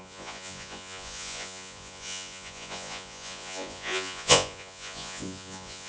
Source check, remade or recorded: remade